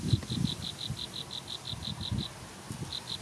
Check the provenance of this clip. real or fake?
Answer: real